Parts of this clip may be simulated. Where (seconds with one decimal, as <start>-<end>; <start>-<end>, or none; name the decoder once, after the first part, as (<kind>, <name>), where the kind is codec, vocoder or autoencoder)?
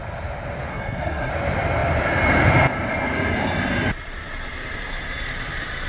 0.7-1.3 (codec, SNAC)